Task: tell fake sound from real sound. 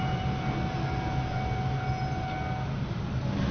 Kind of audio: real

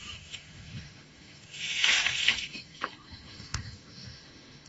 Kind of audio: fake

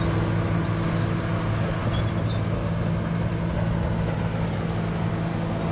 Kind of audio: real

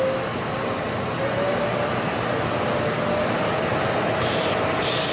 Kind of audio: real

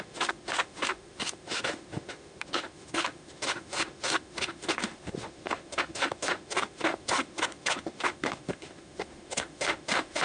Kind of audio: fake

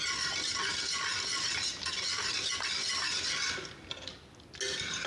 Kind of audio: real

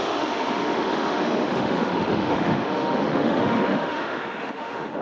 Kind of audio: fake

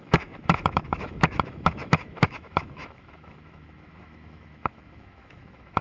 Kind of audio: fake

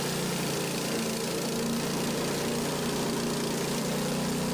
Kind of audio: real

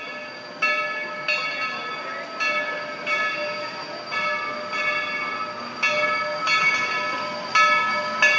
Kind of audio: real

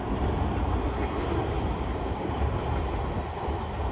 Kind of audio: real